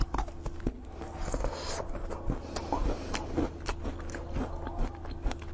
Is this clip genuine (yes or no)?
yes